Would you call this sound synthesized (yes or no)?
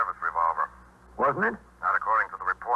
no